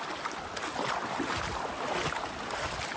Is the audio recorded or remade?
recorded